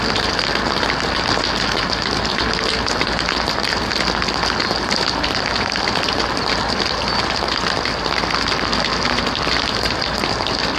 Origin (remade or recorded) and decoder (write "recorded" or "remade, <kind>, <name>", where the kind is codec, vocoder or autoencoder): recorded